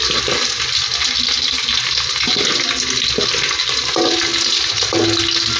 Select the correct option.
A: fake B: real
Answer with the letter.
B